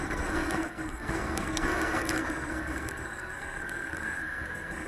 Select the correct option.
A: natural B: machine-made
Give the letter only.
B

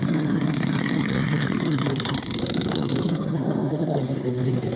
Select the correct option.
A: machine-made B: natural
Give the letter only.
A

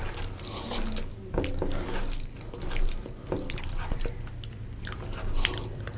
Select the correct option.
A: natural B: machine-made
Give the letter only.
A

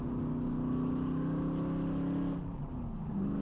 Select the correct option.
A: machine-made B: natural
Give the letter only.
B